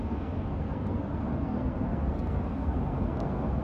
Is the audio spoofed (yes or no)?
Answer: yes